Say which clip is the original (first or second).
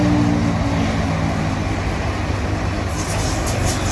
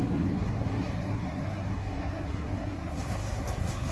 first